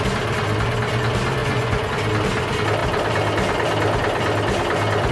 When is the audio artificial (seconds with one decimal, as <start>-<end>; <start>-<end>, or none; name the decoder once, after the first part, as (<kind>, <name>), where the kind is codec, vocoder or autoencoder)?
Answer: 1.4-1.9 (vocoder, Vocos)

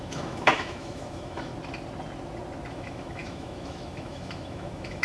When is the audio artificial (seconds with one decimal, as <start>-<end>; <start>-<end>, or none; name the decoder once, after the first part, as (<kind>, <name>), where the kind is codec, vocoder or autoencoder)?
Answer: 0.0-1.5 (autoencoder, DAC-VAE); 2.7-5.0

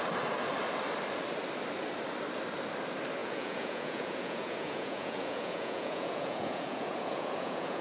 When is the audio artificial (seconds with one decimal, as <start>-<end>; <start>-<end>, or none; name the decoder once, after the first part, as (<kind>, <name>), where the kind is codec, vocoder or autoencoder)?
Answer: 3.2-7.8 (vocoder, Vocos)

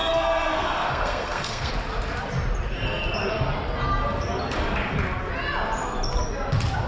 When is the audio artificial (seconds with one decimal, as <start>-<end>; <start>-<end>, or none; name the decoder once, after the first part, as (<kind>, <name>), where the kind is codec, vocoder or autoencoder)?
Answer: 0.0-1.7 (codec, SNAC)

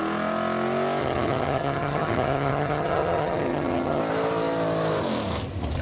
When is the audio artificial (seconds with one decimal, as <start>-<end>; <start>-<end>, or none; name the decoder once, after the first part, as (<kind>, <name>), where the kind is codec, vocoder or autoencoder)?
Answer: 1.0-4.0 (vocoder, HiFi-GAN)

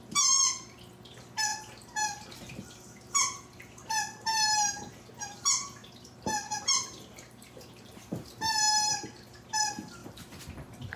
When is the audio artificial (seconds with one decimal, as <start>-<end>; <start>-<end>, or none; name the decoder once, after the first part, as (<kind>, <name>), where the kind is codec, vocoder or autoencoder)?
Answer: 1.5-5.1 (vocoder, BigVGAN v2); 5.8-8.5; 10.0-11.0

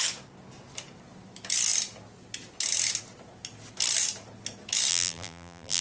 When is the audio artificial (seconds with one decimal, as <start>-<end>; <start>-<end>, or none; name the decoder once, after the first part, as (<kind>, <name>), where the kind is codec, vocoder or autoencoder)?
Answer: 4.9-5.8 (vocoder, BigVGAN v2)